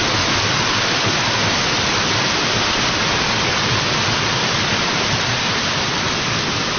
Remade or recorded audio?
recorded